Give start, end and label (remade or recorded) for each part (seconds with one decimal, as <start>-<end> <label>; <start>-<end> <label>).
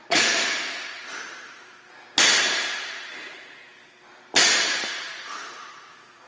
0.0-1.0 remade; 1.0-4.8 recorded; 4.8-6.3 remade